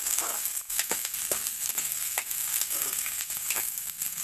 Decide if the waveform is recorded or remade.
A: remade